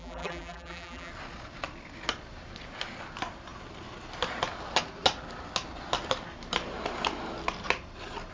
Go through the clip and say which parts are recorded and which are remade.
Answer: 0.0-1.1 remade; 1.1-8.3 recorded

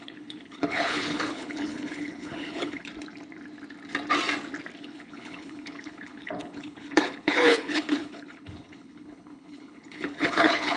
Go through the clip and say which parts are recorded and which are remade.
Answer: 0.0-2.9 remade; 2.9-4.8 recorded; 4.8-10.8 remade

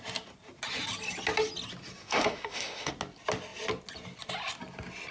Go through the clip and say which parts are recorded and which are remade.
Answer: 0.0-2.0 recorded; 2.0-2.9 remade; 2.9-5.1 recorded

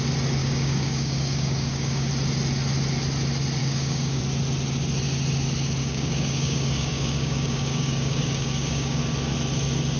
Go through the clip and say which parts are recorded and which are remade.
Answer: 0.0-0.4 recorded; 0.4-2.1 remade; 2.1-3.6 recorded; 3.6-4.2 remade; 4.2-5.8 recorded; 5.8-9.0 remade; 9.0-10.0 recorded

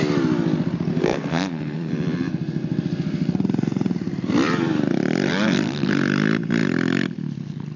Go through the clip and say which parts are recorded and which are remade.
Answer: 0.0-0.9 recorded; 0.9-1.9 remade; 1.9-7.8 recorded